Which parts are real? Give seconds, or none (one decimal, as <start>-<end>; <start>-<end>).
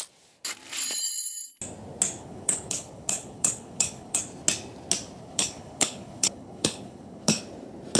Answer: 0.0-2.2; 4.2-5.2; 7.4-8.0